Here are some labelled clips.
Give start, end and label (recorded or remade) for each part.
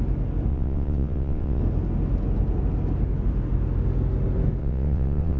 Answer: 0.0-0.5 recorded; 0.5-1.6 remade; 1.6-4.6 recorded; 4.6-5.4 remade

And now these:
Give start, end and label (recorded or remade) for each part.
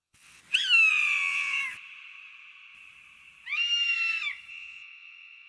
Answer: 0.0-0.4 remade; 0.4-0.9 recorded; 0.9-1.6 remade; 1.6-4.5 recorded; 4.5-5.5 remade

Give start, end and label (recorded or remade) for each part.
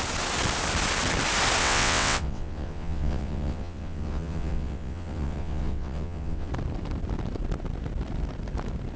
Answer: 0.0-1.6 recorded; 1.6-6.5 remade; 6.5-9.0 recorded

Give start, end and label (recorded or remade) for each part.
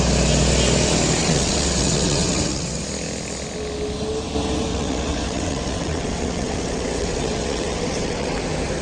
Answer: 0.0-1.2 recorded; 1.2-2.8 remade; 2.8-4.7 recorded; 4.7-8.4 remade; 8.4-8.8 recorded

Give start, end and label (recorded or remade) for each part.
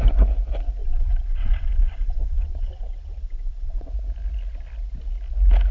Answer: 0.0-0.8 recorded; 0.8-3.9 remade; 3.9-5.7 recorded